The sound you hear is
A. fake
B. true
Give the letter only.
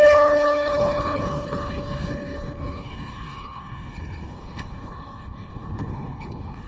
A